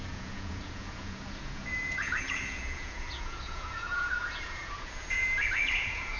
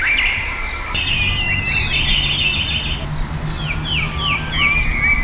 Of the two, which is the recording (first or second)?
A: second